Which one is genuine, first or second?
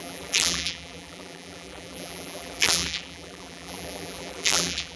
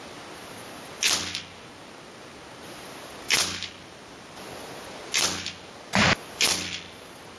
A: second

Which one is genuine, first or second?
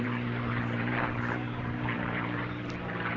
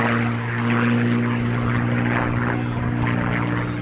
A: second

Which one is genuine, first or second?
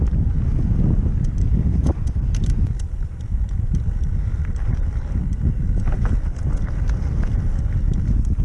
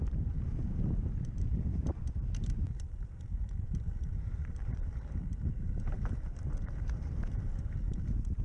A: first